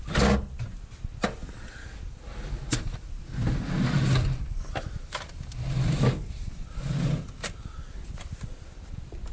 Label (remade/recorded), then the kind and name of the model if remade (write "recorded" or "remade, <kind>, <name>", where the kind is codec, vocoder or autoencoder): recorded